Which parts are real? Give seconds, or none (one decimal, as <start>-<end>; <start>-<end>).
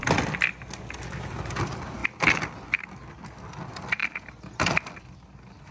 0.0-5.7